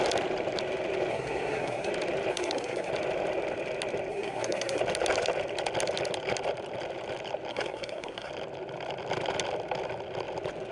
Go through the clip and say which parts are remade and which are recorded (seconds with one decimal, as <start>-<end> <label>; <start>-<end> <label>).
0.0-1.1 recorded; 1.1-1.9 remade; 1.9-2.3 recorded; 2.3-2.9 remade; 2.9-4.1 recorded; 4.1-4.8 remade; 4.8-7.5 recorded; 7.5-8.3 remade; 8.3-10.7 recorded